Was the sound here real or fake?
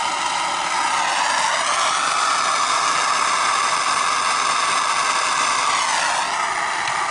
real